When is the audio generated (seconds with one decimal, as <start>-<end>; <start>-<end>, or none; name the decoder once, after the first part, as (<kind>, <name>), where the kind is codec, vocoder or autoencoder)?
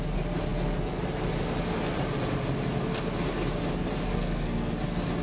4.1-4.7 (codec, SNAC)